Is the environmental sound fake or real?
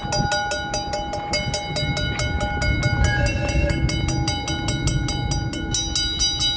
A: real